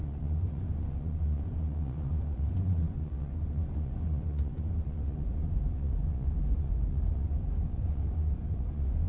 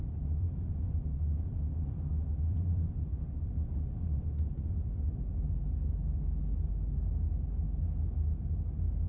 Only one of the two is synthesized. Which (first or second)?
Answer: first